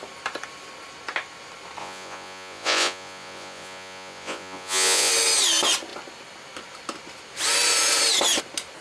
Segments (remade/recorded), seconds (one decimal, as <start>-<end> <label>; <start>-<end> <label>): 0.0-1.8 recorded; 1.8-5.1 remade; 5.1-8.8 recorded